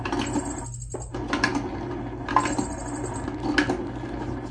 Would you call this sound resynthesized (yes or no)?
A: no